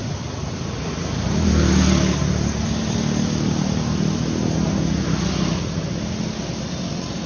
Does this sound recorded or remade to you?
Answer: recorded